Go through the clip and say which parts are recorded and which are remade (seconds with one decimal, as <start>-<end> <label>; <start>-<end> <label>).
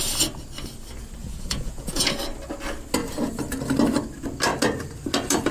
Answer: 0.0-1.2 recorded; 1.2-2.2 remade; 2.2-5.5 recorded